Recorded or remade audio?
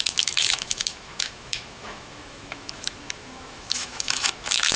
remade